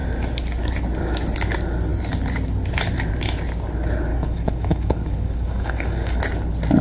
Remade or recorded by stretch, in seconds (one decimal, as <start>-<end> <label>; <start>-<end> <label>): 0.0-4.1 recorded; 4.1-6.2 remade; 6.2-6.8 recorded